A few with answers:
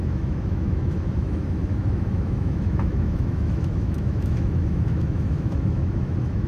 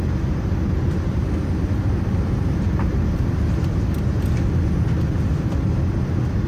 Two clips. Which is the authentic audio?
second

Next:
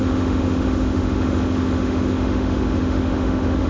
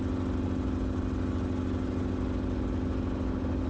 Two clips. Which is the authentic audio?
second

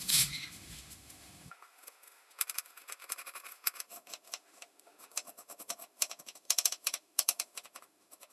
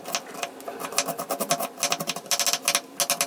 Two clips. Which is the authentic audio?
second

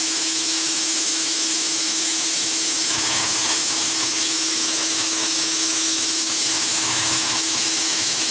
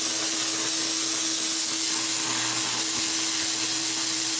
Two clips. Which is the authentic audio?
second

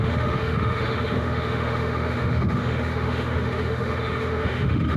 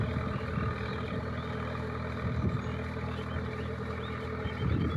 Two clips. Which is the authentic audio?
second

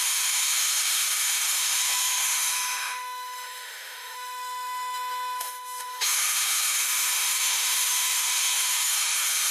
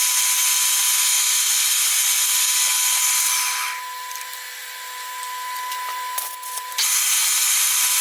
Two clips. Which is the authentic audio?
second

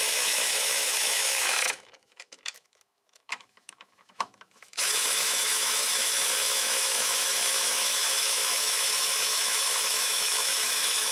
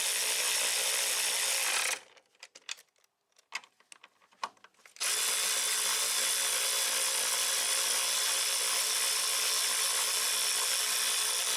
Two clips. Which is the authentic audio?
second